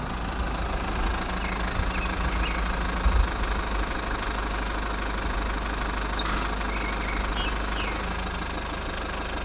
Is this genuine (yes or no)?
yes